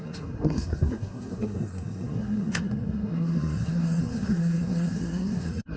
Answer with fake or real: fake